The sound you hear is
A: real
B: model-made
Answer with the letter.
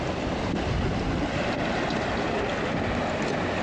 A